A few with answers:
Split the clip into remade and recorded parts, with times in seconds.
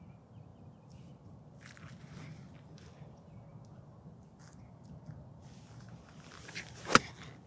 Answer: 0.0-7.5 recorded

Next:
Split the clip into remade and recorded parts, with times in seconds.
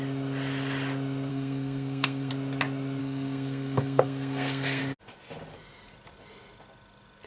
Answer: 0.0-1.3 recorded; 1.3-2.3 remade; 2.3-3.0 recorded; 3.0-4.8 remade; 4.8-7.3 recorded